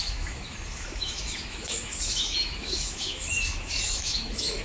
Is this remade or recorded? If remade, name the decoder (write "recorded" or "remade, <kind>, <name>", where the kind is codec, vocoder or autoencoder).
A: remade, autoencoder, DAC-VAE